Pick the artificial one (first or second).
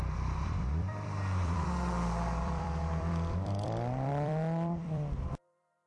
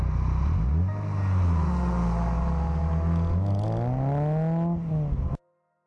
first